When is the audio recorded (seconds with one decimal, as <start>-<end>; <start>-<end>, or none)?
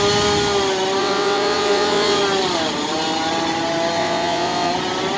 0.0-1.0; 2.2-4.0; 4.7-5.2